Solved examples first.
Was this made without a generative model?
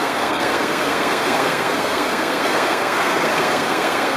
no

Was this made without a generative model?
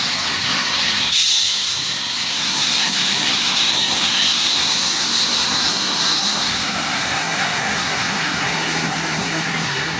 no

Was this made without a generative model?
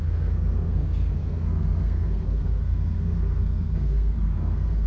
no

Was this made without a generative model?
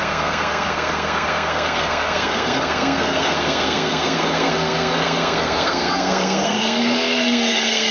no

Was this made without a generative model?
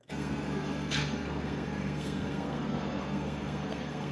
no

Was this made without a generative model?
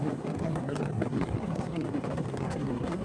no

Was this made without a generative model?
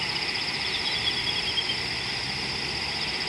yes